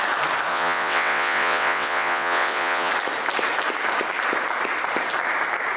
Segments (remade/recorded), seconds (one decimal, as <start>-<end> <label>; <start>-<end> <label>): 0.0-0.5 recorded; 0.5-2.9 remade; 2.9-5.8 recorded